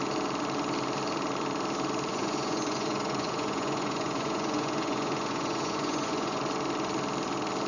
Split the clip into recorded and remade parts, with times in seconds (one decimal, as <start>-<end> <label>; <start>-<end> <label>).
0.0-2.1 recorded; 2.1-6.4 remade; 6.4-7.7 recorded